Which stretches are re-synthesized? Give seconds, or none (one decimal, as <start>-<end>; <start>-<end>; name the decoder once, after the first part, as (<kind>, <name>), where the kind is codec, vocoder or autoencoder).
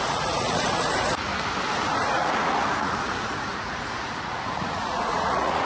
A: 0.0-1.3 (vocoder, Vocos); 1.8-5.6